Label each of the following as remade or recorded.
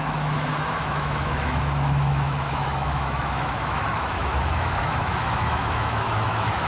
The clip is remade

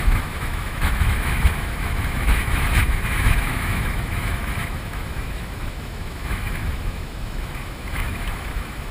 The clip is remade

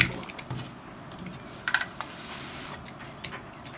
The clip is recorded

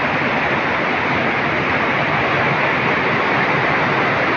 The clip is recorded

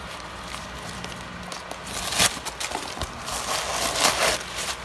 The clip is recorded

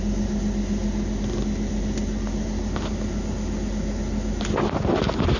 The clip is recorded